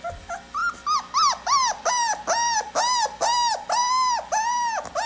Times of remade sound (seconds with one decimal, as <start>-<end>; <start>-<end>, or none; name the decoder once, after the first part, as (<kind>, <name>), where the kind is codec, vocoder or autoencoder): none